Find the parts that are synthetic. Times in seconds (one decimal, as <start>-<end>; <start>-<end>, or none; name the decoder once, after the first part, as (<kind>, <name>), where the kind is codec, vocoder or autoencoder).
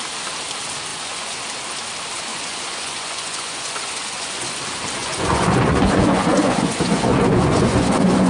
0.9-1.4 (vocoder, Vocos); 2.3-4.6; 5.0-8.3